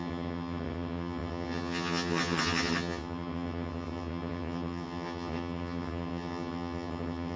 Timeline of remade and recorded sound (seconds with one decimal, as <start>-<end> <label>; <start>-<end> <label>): 0.0-7.4 remade